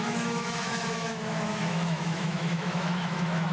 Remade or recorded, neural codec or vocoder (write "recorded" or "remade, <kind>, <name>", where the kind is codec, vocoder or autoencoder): remade, autoencoder, DAC-VAE